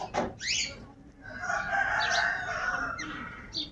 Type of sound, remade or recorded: recorded